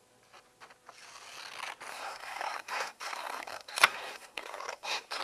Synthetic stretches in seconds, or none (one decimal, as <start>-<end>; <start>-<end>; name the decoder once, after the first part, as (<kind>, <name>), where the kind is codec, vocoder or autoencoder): 1.9-5.2 (codec, SNAC)